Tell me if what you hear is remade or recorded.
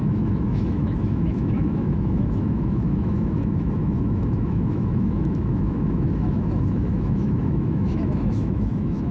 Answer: remade